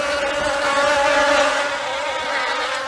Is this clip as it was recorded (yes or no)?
yes